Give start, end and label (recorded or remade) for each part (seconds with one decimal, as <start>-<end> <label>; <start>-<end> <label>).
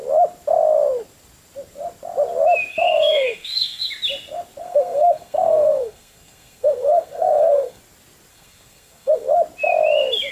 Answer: 0.0-2.7 recorded; 2.7-3.9 remade; 3.9-4.6 recorded; 4.6-7.8 remade; 7.8-8.3 recorded; 8.3-9.3 remade; 9.3-10.3 recorded